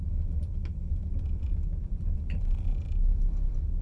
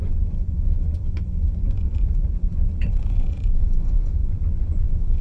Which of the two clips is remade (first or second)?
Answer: second